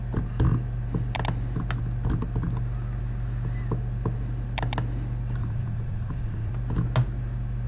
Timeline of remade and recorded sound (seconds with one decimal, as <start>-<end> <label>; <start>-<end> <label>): 0.0-5.4 recorded; 5.4-6.5 remade; 6.5-7.7 recorded